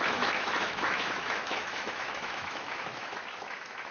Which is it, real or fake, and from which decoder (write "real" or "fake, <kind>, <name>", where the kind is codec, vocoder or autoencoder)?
fake, autoencoder, DAC-VAE